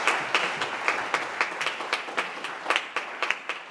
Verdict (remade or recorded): recorded